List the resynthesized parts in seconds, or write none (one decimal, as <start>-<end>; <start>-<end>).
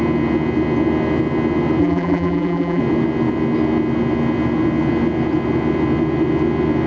1.8-2.8